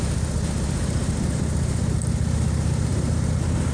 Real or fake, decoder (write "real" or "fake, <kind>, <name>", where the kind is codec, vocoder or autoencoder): fake, vocoder, BigVGAN v2